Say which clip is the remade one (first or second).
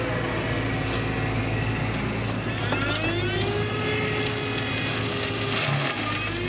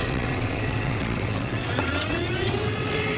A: second